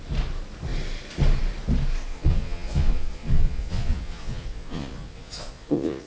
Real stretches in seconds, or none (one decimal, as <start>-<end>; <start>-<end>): 0.0-2.1